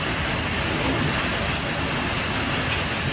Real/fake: real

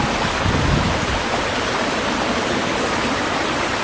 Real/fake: real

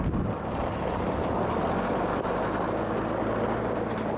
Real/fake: real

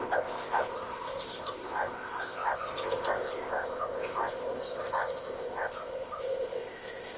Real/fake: fake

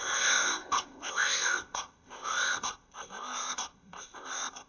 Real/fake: fake